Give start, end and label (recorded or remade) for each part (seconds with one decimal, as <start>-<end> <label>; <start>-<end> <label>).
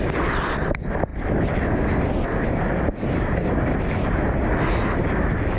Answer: 0.0-5.6 recorded